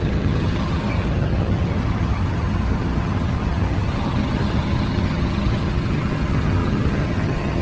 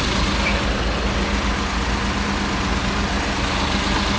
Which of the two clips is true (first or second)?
second